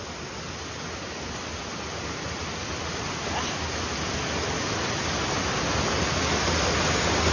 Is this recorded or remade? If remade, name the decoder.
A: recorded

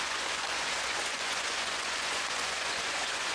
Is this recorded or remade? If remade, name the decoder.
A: remade, vocoder, Vocos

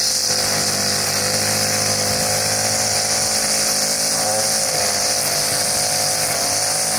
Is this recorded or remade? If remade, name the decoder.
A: recorded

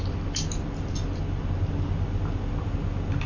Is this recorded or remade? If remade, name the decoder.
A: recorded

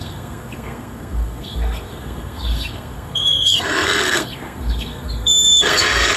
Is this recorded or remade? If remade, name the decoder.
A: remade, codec, SNAC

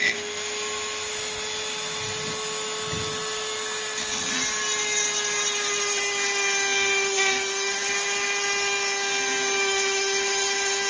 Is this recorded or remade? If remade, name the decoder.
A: recorded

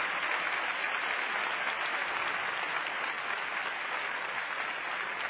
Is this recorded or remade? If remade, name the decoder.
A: recorded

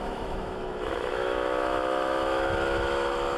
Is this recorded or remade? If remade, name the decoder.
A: remade, autoencoder, DAC-VAE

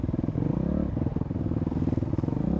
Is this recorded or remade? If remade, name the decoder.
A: recorded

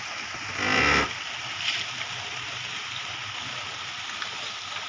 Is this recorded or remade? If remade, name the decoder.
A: recorded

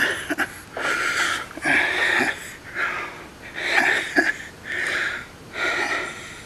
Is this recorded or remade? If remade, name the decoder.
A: recorded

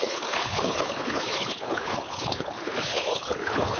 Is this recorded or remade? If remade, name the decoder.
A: remade, codec, HILCodec